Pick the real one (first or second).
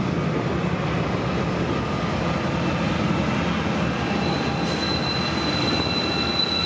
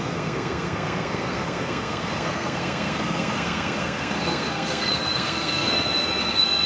first